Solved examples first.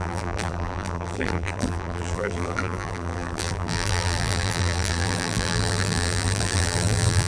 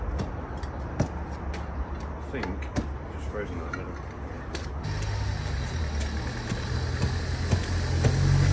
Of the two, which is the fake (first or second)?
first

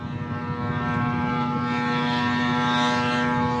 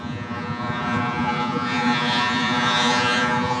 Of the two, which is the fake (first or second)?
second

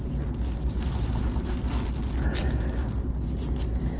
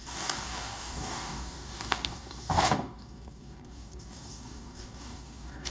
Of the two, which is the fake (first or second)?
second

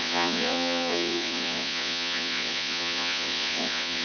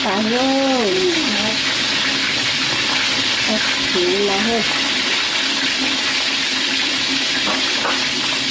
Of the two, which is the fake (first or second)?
first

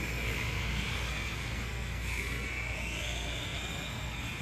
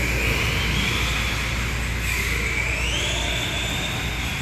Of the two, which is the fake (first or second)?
first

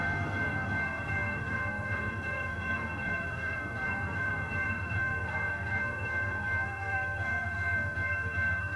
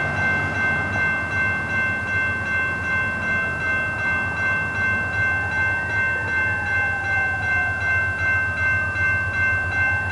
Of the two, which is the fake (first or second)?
first